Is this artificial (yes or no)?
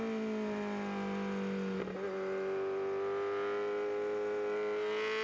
no